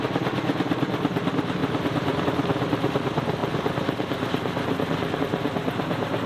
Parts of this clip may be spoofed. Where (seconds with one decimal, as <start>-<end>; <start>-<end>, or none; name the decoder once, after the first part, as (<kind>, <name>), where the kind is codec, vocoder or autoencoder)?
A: none